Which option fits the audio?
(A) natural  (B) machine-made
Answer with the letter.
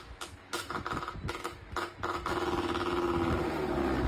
A